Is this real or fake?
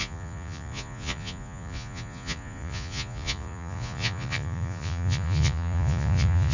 fake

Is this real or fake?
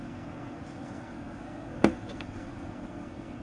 fake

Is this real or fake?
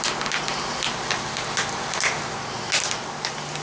real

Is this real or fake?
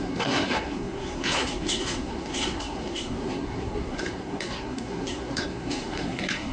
fake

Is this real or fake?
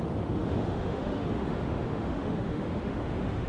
fake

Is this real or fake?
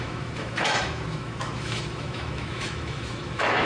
fake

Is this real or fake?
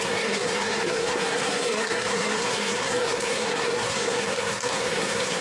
fake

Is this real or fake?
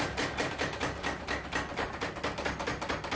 real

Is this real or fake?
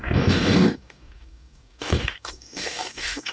fake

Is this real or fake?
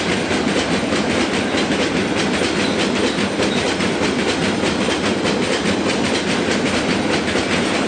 real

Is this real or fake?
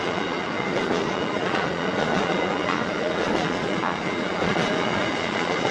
fake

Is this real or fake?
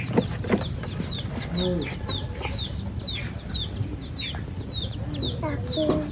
real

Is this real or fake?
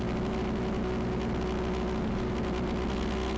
real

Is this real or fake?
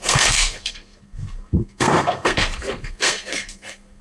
fake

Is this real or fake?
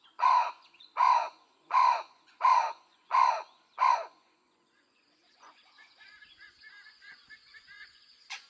fake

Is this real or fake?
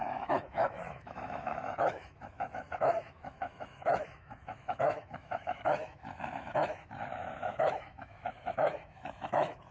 fake